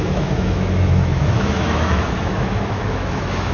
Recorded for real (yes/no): no